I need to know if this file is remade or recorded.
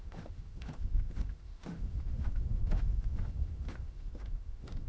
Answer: remade